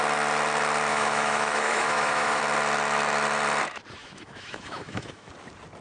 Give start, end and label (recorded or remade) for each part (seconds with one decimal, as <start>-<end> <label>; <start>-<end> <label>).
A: 0.0-0.9 recorded; 0.9-2.4 remade; 2.4-4.0 recorded; 4.0-5.3 remade; 5.3-5.8 recorded